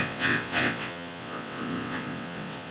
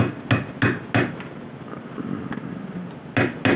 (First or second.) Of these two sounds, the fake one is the first